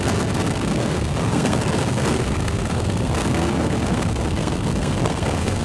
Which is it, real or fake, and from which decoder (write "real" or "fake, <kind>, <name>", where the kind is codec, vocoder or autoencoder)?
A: fake, codec, SNAC